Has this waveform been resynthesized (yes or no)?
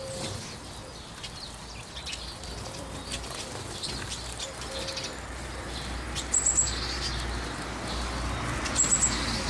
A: no